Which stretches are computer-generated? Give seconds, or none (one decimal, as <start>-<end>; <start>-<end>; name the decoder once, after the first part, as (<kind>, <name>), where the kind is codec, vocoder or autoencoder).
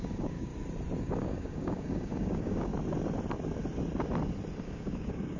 0.0-0.5 (codec, DAC); 1.0-2.7; 4.6-5.4